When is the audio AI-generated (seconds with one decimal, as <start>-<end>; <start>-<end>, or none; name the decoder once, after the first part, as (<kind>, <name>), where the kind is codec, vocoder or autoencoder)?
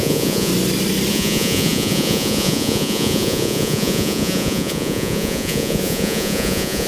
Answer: 0.0-0.5 (vocoder, Vocos); 1.1-6.9